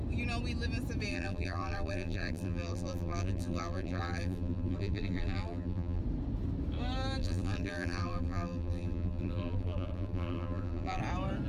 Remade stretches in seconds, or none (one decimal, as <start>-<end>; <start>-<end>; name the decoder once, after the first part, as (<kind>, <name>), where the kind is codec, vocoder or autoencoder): 1.1-6.0 (vocoder, BigVGAN v2); 7.2-11.0